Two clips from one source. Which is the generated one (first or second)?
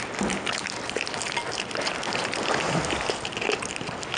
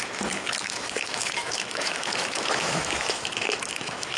second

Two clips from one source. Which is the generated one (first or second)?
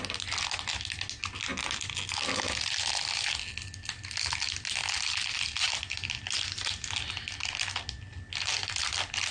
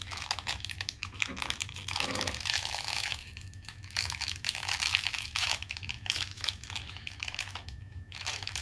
second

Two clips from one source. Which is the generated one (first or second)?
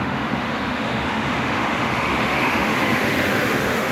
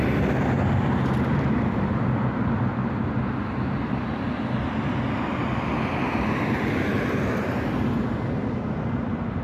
first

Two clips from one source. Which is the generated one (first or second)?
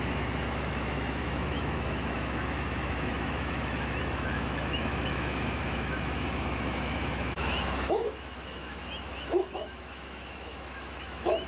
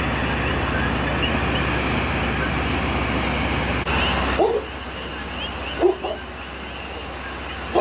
first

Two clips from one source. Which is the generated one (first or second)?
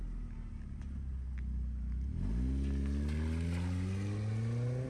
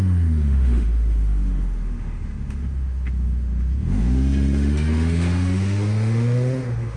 second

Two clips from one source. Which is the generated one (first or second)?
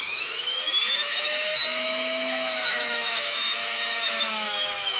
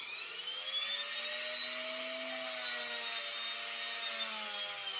first